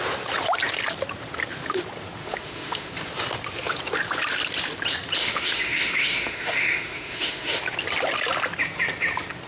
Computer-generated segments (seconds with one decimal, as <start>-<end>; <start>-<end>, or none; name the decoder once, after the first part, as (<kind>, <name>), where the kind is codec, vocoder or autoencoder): 2.2-2.9 (autoencoder, DAC-VAE); 5.2-7.6